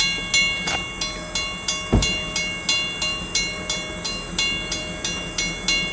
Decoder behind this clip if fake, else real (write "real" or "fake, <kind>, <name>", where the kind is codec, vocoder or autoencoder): real